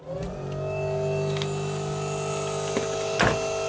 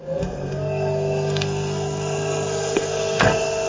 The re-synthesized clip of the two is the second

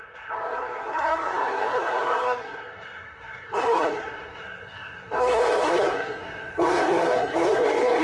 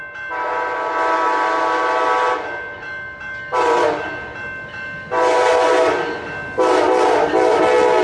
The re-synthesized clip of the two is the first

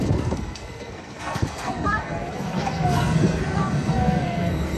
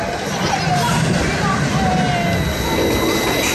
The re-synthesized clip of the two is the first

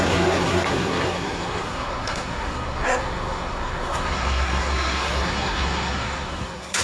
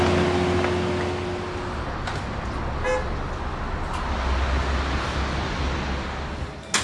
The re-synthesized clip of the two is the first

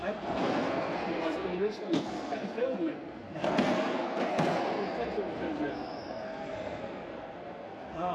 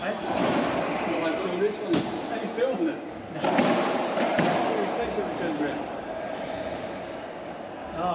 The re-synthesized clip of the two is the first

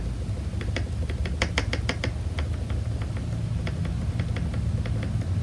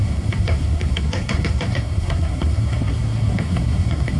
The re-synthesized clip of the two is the second